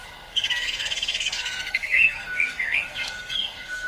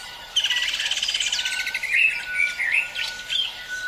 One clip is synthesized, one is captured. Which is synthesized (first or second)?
first